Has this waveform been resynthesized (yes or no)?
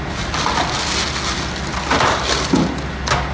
no